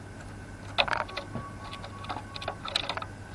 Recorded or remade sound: recorded